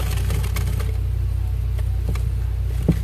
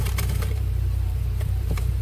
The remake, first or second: second